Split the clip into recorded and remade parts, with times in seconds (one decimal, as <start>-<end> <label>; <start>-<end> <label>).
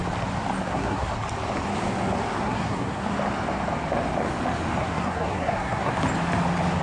0.0-0.6 recorded; 0.6-1.1 remade; 1.1-2.4 recorded; 2.4-3.0 remade; 3.0-4.8 recorded; 4.8-5.9 remade; 5.9-6.8 recorded